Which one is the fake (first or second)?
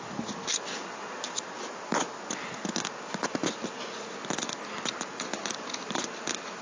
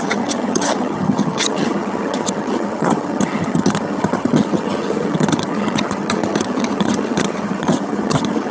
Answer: second